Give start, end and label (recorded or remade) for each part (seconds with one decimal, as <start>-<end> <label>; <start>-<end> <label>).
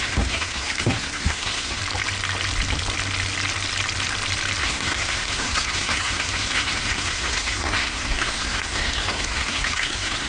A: 0.0-1.8 remade; 1.8-4.6 recorded; 4.6-10.3 remade